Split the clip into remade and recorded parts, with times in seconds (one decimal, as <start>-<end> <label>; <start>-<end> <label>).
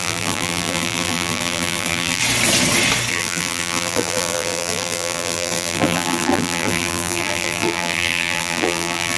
0.0-2.2 remade; 2.2-3.1 recorded; 3.1-9.2 remade